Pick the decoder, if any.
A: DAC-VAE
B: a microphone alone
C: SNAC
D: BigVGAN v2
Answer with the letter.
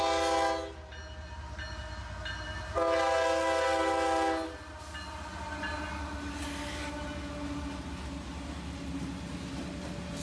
B